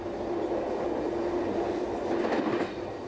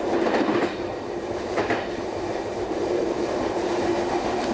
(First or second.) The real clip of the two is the first